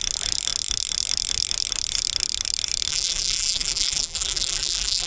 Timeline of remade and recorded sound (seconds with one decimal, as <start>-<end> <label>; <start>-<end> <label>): 0.0-2.9 recorded; 2.9-5.1 remade